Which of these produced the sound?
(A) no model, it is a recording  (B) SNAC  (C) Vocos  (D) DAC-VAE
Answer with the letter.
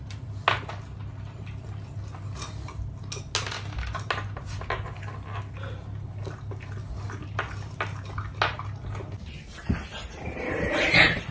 A